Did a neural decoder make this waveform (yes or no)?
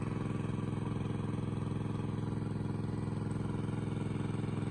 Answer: no